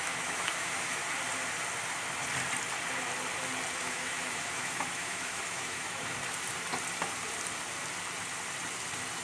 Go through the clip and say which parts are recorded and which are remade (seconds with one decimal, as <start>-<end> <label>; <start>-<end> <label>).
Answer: 0.0-1.0 remade; 1.0-3.8 recorded; 3.8-6.2 remade; 6.2-9.2 recorded